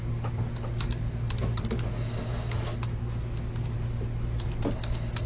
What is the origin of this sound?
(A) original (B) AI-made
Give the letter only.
A